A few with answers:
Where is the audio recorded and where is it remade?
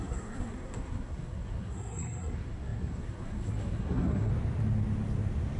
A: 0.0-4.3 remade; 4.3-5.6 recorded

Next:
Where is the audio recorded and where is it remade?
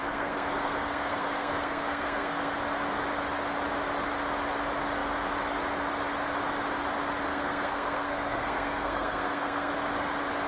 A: 0.0-2.5 remade; 2.5-7.3 recorded; 7.3-9.7 remade; 9.7-10.5 recorded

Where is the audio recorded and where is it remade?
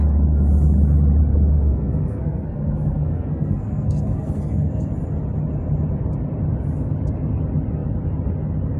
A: 0.0-1.3 recorded; 1.3-4.9 remade; 4.9-8.8 recorded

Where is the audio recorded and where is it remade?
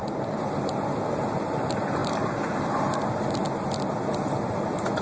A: 0.0-5.0 recorded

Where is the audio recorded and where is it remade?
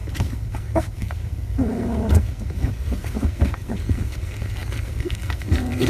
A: 0.0-5.9 remade